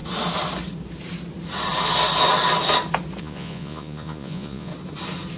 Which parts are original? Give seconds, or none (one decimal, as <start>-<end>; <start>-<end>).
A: 0.0-3.2; 4.7-5.4